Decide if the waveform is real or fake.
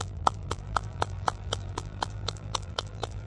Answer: fake